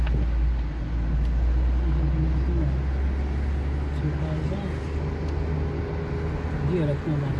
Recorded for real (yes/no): yes